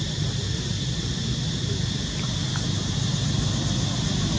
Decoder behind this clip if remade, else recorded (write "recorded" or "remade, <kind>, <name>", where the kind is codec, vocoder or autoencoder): recorded